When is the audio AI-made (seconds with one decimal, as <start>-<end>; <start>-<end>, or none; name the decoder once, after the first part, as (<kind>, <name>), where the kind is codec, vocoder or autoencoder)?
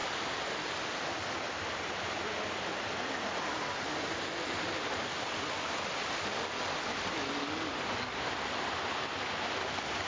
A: 7.4-8.2 (codec, DAC)